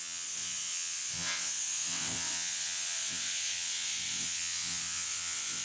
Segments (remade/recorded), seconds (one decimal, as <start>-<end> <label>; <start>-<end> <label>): 0.0-5.6 remade